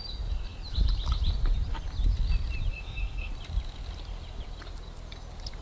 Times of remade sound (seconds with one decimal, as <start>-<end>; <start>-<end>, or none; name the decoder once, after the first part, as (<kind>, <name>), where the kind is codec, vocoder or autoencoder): 2.7-3.3 (codec, SNAC)